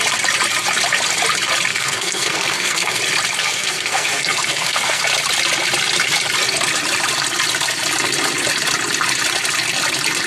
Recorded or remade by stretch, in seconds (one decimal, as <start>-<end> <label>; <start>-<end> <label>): 0.0-1.7 recorded; 1.7-3.0 remade; 3.0-3.4 recorded; 3.4-5.0 remade; 5.0-10.3 recorded